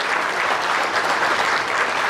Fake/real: fake